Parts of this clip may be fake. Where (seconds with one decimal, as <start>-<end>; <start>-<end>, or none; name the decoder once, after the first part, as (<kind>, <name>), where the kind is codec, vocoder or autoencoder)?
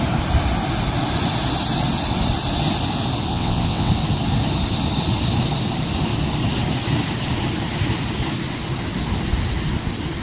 3.3-3.9 (vocoder, WaveNeXt)